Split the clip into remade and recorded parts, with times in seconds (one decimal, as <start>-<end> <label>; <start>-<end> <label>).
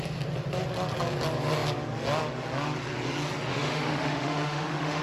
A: 0.0-3.5 recorded; 3.5-5.0 remade